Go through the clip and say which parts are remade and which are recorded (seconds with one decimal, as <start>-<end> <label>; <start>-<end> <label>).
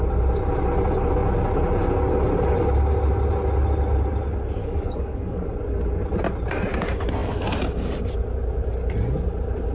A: 0.0-4.6 recorded; 4.6-5.5 remade; 5.5-9.7 recorded